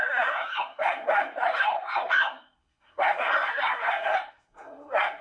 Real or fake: fake